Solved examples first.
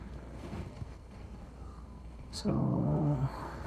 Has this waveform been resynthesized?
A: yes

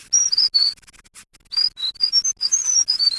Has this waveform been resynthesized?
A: no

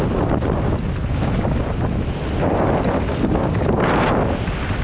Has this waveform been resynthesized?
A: no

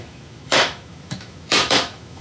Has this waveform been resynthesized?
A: yes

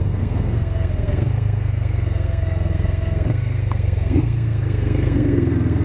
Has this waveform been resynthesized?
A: yes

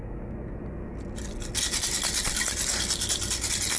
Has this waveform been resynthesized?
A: no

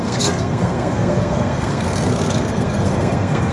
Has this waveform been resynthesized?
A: yes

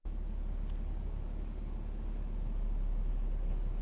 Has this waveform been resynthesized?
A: no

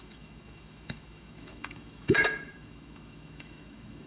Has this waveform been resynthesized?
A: yes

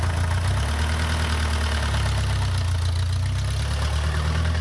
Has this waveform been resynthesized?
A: no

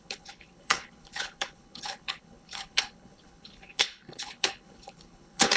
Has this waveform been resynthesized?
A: yes